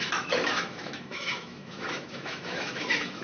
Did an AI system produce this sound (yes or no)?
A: yes